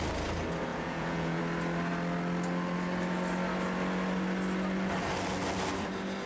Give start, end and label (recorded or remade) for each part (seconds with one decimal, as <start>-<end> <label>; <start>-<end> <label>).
0.0-0.7 recorded; 0.7-1.4 remade; 1.4-6.3 recorded